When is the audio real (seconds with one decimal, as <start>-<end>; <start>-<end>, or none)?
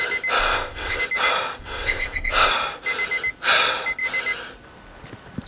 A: 0.0-0.4; 1.0-1.6; 2.5-5.5